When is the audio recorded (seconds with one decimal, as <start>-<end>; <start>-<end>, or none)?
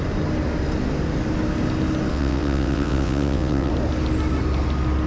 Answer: 0.0-2.1; 3.7-5.1